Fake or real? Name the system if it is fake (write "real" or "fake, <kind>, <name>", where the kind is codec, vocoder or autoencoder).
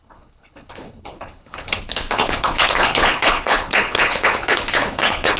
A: fake, codec, HILCodec